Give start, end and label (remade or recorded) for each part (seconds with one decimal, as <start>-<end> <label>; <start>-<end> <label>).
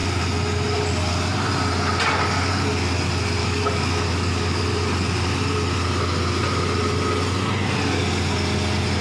0.0-3.4 recorded; 3.4-4.6 remade; 4.6-9.0 recorded